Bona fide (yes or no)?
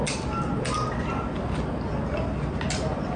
yes